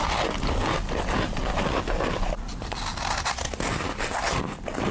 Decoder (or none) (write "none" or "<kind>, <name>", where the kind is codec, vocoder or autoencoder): none